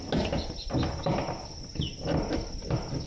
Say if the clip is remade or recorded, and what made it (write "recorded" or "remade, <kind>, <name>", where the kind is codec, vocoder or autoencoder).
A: recorded